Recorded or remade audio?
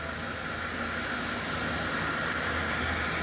recorded